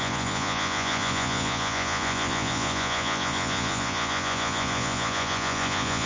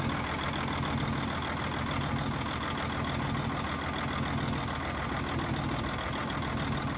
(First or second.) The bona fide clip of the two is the second